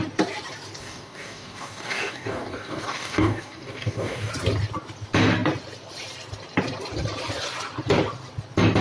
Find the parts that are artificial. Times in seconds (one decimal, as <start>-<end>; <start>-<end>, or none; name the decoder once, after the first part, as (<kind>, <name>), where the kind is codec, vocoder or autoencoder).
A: 0.8-4.3 (codec, DAC)